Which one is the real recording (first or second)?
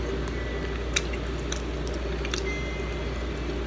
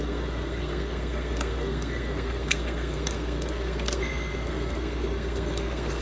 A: first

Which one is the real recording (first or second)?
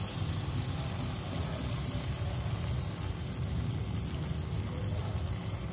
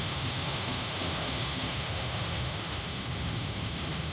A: first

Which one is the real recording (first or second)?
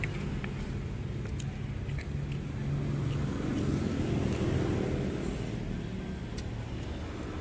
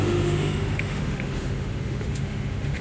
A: first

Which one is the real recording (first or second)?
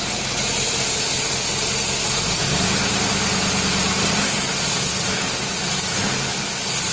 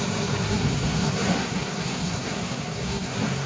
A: first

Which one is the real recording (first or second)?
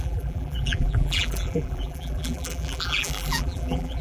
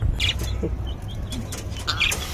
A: second